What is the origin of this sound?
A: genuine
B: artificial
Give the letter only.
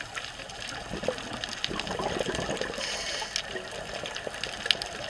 A